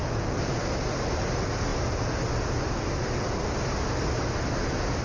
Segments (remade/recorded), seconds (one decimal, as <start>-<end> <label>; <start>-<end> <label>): 0.0-5.0 recorded